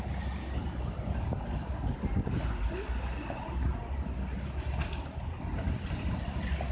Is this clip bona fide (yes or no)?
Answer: yes